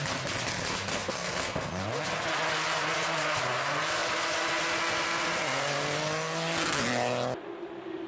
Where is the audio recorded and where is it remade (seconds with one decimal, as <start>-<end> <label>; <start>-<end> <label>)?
0.0-0.9 recorded; 0.9-1.8 remade; 1.8-8.1 recorded